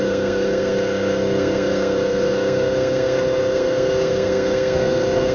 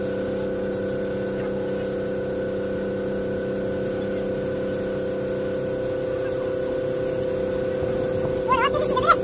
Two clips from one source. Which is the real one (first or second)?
second